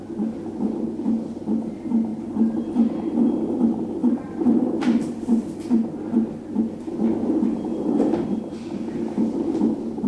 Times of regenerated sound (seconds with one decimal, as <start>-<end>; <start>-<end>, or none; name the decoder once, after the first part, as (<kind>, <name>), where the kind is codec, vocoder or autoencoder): 2.1-2.7 (vocoder, BigVGAN v2); 4.0-4.8